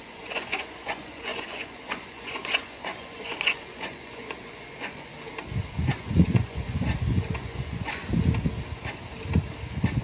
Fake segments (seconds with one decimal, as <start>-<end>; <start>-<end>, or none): 0.0-5.1; 5.7-8.0